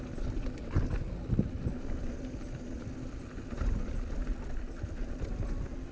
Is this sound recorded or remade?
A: recorded